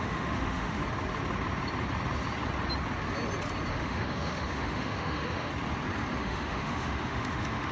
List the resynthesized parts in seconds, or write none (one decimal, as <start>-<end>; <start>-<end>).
0.0-0.8; 3.7-5.5; 6.2-7.7